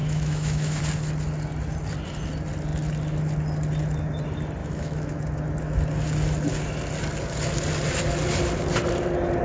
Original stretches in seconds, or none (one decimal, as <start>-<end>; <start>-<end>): 0.8-4.6; 5.2-9.4